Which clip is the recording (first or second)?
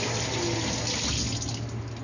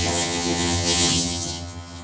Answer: first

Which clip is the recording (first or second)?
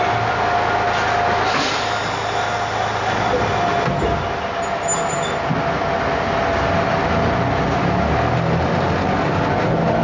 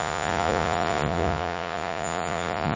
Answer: first